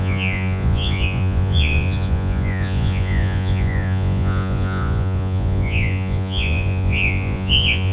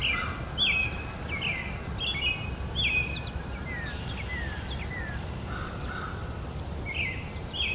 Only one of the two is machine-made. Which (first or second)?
first